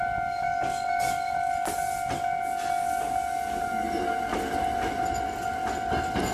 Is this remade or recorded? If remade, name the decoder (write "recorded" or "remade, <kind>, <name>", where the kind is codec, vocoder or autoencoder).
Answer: recorded